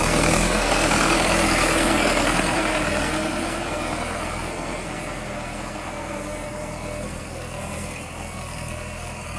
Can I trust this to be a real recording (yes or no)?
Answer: no